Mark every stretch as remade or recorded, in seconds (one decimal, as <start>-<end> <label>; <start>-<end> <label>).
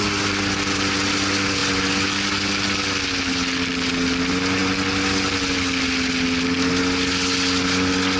0.0-8.2 recorded